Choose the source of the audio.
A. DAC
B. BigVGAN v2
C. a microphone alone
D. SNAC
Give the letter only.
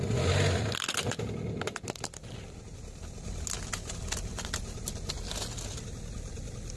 C